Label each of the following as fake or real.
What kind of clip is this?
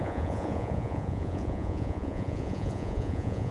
fake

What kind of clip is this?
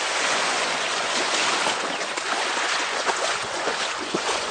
fake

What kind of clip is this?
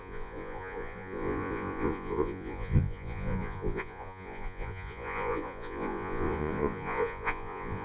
fake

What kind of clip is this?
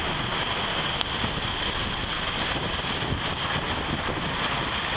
real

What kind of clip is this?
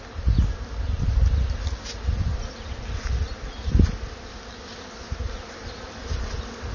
real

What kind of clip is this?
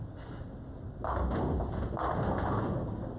real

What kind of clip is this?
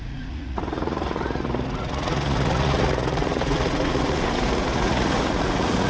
fake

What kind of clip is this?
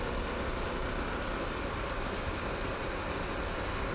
real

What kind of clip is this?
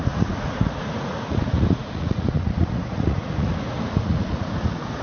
fake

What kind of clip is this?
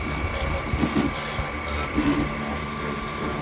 real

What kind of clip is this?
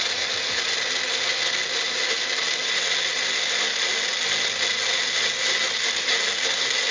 real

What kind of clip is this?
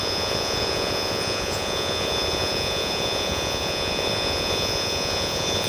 fake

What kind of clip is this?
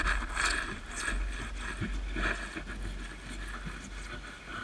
real